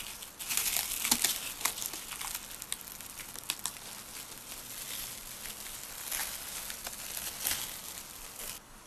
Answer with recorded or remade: recorded